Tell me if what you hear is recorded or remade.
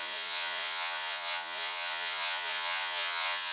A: remade